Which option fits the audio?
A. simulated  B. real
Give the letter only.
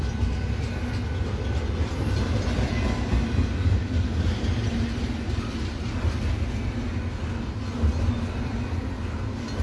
B